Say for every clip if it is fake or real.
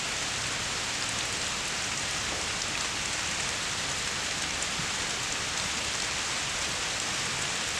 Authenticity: real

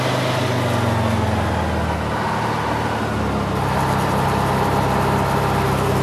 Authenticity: real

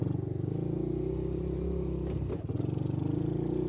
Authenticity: real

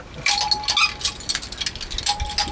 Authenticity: real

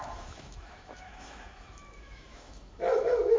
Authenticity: fake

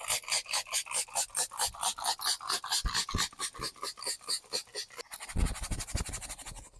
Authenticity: real